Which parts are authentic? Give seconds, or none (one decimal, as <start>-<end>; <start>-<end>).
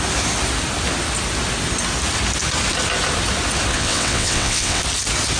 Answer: 0.0-3.7; 4.8-5.4